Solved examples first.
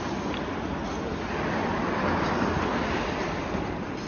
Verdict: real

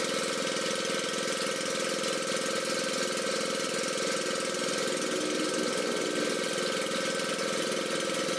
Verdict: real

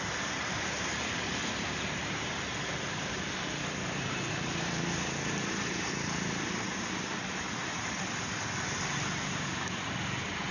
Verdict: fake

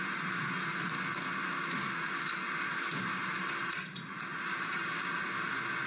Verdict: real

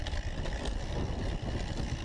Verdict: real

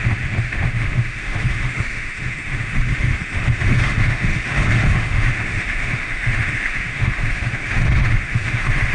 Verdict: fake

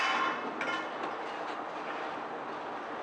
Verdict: real